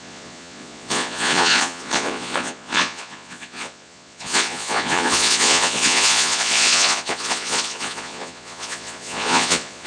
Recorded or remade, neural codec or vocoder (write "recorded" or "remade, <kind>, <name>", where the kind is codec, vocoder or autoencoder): remade, vocoder, Vocos